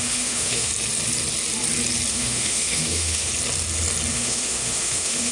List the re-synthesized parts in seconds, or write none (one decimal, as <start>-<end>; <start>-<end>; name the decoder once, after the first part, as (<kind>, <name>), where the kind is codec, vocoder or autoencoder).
0.0-0.7 (autoencoder, DAC-VAE); 2.1-3.3; 4.1-5.3